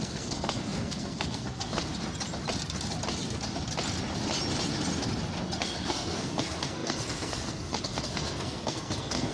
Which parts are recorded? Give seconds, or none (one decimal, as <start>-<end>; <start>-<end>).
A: 1.9-5.6